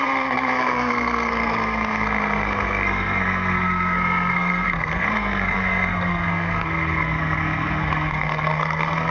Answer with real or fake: fake